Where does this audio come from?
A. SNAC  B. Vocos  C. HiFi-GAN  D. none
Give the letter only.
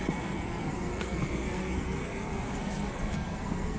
A